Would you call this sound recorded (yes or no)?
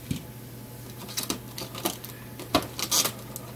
yes